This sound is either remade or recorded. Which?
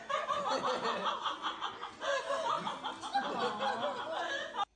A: recorded